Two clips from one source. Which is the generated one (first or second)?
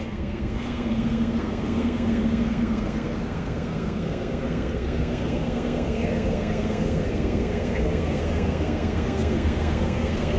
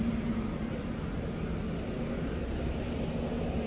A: first